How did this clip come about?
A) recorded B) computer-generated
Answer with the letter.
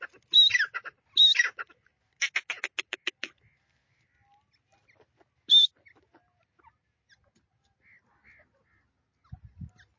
A